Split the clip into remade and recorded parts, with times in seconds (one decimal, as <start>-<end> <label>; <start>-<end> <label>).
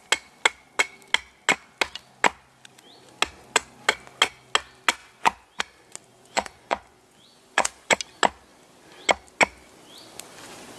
0.0-5.0 recorded; 5.0-5.6 remade; 5.6-6.1 recorded; 6.1-7.9 remade; 7.9-10.8 recorded